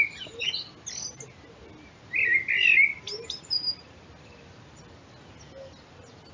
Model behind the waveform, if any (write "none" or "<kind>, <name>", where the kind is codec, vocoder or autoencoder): none